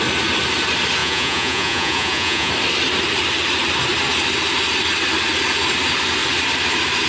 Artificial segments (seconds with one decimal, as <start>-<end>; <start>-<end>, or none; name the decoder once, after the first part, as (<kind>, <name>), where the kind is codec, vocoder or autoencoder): 1.0-2.5 (vocoder, Vocos)

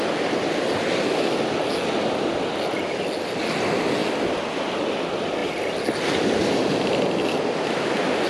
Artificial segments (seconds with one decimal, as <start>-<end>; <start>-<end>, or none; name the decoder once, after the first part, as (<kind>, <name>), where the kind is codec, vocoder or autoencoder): none

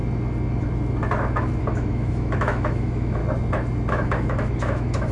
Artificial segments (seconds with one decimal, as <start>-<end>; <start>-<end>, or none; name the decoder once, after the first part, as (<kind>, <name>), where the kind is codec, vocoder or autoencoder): 1.6-3.2 (autoencoder, DAC-VAE); 3.9-5.1

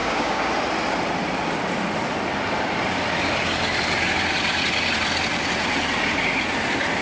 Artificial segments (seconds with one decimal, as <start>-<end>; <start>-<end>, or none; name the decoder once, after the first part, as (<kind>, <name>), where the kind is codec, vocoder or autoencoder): 0.0-0.5 (codec, DAC)